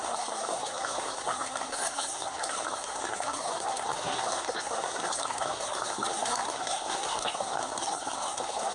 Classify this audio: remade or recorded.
remade